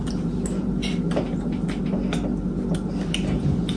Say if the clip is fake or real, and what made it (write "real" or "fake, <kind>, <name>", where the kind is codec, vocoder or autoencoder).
real